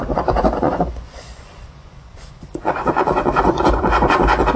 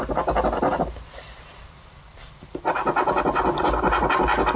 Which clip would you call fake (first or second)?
first